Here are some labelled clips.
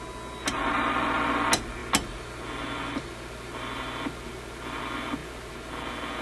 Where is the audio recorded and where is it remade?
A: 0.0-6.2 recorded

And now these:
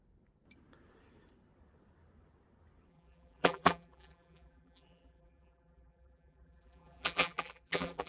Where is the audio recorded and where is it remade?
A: 0.0-2.9 recorded; 2.9-8.1 remade

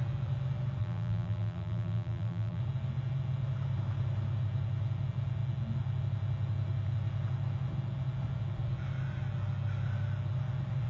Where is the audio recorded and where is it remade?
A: 0.0-0.8 recorded; 0.8-2.6 remade; 2.6-10.9 recorded

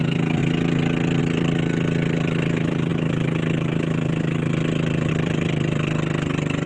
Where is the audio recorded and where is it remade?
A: 0.0-0.4 remade; 0.4-1.2 recorded; 1.2-6.7 remade

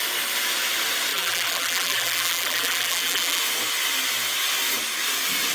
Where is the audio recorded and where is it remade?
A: 0.0-1.1 recorded; 1.1-3.4 remade; 3.4-5.5 recorded

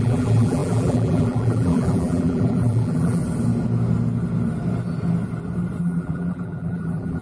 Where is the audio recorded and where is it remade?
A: 0.0-3.2 remade; 3.2-5.8 recorded; 5.8-7.2 remade

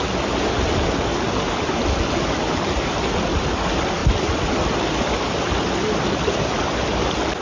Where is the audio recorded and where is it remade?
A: 0.0-7.4 recorded